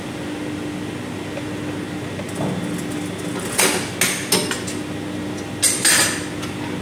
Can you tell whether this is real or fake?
real